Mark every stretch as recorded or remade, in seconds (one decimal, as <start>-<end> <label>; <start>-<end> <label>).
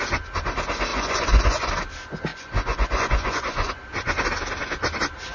0.0-0.9 recorded; 0.9-1.7 remade; 1.7-2.3 recorded; 2.3-3.7 remade; 3.7-5.3 recorded